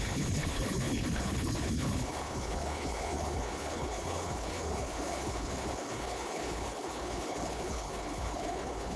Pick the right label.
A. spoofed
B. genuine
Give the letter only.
A